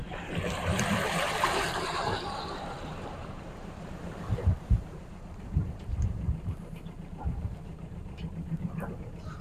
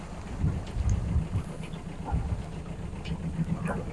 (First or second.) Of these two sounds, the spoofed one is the first